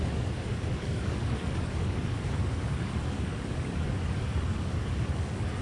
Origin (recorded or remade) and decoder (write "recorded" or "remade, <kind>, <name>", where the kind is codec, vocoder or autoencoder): remade, codec, DAC